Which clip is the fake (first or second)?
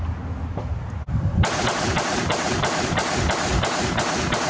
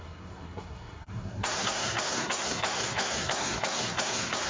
second